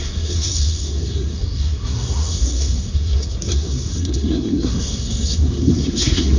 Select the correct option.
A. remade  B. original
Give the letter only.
A